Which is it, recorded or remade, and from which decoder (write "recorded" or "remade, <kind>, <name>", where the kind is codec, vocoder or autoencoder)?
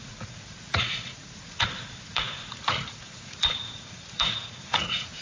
remade, vocoder, Vocos